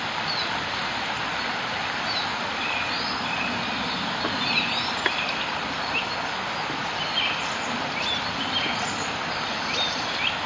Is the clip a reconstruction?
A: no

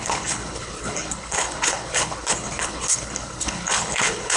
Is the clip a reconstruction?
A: yes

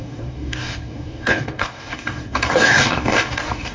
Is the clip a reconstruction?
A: yes